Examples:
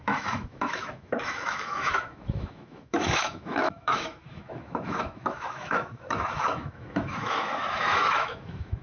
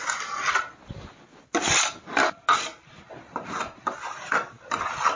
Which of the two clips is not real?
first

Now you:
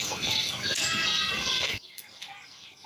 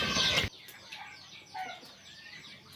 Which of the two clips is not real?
first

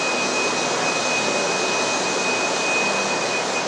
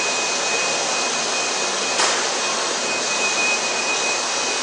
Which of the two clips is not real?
second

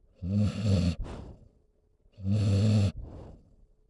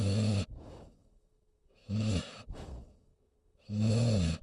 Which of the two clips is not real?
second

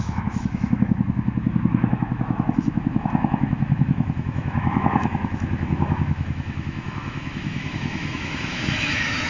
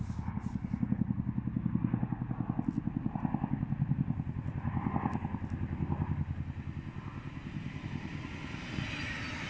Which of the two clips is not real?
first